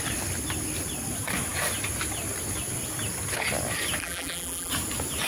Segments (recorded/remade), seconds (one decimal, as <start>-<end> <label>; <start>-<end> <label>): 0.0-4.0 recorded; 4.0-4.7 remade; 4.7-5.3 recorded